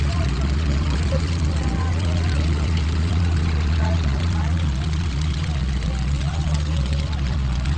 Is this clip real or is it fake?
fake